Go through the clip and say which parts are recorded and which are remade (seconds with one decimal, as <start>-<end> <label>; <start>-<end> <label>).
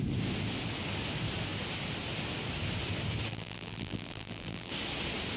0.0-3.3 recorded; 3.3-4.7 remade; 4.7-5.4 recorded